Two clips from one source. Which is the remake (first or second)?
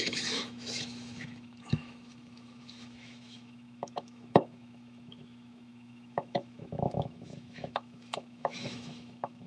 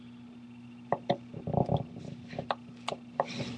first